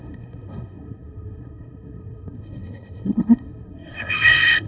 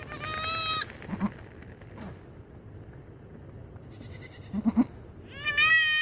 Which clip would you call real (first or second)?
second